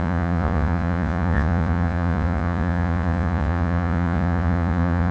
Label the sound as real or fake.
fake